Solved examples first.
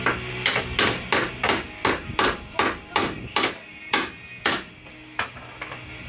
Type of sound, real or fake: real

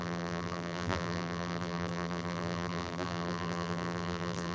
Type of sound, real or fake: fake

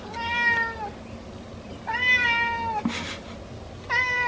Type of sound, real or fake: real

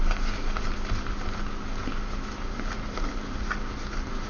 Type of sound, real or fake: real